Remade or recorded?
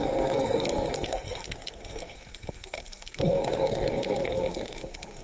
remade